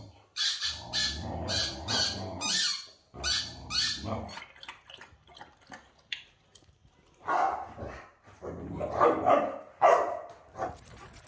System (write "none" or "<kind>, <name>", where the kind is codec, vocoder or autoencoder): none